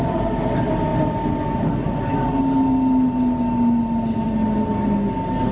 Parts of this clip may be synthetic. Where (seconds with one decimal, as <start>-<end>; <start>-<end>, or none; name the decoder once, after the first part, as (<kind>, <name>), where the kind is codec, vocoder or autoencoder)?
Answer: none